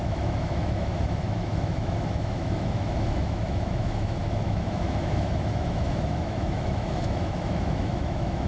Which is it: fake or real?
fake